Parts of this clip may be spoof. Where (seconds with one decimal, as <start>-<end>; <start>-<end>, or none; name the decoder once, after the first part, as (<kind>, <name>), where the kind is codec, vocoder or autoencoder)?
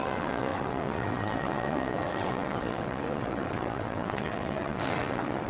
0.0-5.5 (vocoder, WaveNeXt)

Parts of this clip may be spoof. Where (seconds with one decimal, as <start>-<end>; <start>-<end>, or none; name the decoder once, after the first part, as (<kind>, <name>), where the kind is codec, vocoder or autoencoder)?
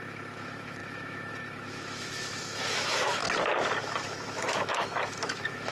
0.0-3.2 (autoencoder, DAC-VAE); 3.8-5.7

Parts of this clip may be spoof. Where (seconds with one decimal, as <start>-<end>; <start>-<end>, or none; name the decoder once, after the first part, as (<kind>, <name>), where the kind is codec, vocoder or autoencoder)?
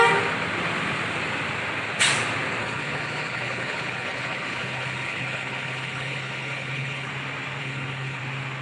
2.6-7.1 (codec, HILCodec); 7.6-8.2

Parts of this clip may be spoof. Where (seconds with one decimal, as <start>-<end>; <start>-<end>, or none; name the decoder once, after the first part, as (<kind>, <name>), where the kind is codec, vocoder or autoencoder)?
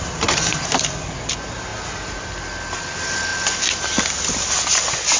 none